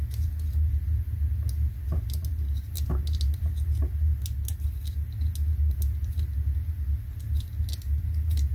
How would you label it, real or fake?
real